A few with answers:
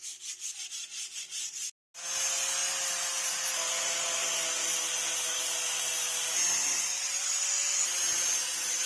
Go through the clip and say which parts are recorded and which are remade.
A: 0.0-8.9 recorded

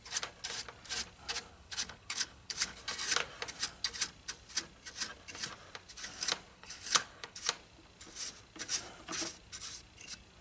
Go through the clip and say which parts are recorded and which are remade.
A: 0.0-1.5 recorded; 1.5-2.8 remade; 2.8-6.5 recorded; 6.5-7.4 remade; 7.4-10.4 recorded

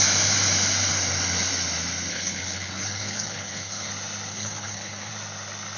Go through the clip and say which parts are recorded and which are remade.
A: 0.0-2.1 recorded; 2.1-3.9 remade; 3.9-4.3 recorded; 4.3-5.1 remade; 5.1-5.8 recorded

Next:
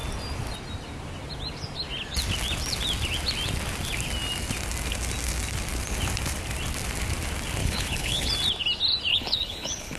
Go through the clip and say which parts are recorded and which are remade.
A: 0.0-7.6 recorded; 7.6-8.3 remade; 8.3-9.1 recorded; 9.1-10.0 remade

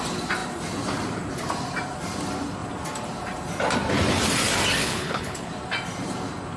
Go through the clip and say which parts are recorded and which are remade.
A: 0.0-4.8 recorded; 4.8-5.5 remade; 5.5-6.6 recorded

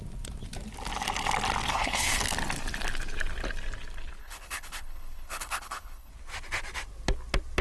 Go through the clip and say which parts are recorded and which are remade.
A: 0.0-1.7 recorded; 1.7-2.2 remade; 2.2-4.2 recorded; 4.2-6.1 remade; 6.1-7.6 recorded

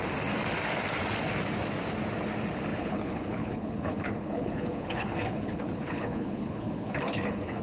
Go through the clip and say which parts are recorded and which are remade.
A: 0.0-2.7 recorded; 2.7-7.6 remade

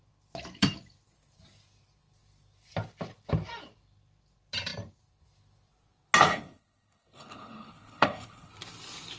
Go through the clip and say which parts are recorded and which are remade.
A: 0.0-6.3 recorded; 6.3-8.5 remade; 8.5-9.2 recorded